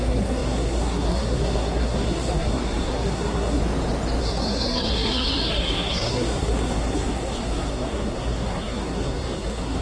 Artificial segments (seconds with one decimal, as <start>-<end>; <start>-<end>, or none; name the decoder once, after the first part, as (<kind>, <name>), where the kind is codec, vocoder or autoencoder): 0.0-3.6 (codec, SNAC); 4.2-9.8